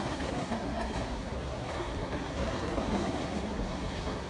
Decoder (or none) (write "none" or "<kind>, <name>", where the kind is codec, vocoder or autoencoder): codec, SNAC